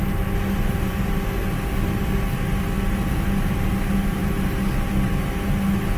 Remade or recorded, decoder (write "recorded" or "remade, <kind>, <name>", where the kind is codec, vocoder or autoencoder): recorded